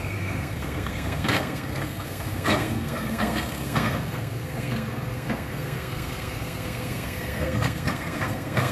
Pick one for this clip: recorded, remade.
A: remade